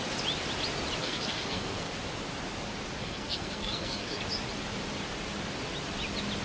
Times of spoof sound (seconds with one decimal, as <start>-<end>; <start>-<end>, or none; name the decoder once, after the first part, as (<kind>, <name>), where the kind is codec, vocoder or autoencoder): 1.0-1.9 (codec, SNAC); 3.0-4.2